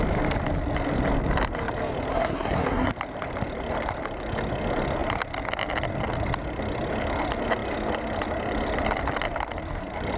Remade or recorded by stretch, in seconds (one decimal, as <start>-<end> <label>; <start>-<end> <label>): 0.0-2.1 recorded; 2.1-2.9 remade; 2.9-10.2 recorded